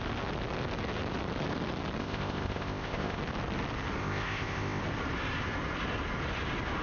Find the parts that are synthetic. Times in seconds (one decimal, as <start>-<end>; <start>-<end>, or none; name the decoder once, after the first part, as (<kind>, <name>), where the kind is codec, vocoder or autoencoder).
2.0-3.2 (codec, ZipCodec); 4.0-4.8